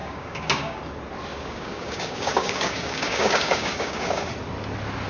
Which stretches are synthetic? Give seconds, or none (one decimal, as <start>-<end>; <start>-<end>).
0.0-0.8; 1.3-4.3